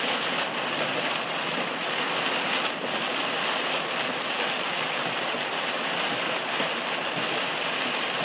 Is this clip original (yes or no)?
yes